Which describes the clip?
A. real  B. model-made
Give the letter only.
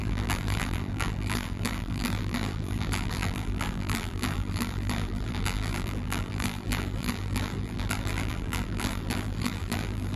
B